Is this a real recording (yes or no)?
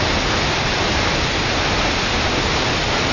yes